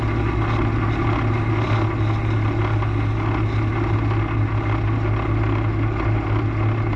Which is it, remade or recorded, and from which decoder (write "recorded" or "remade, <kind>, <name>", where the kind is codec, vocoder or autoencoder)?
recorded